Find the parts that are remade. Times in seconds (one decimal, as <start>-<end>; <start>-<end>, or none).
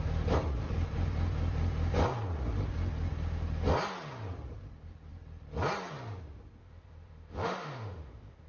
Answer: 6.6-8.5